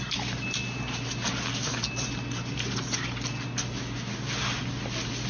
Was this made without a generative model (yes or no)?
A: yes